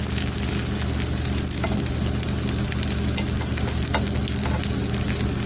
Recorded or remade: recorded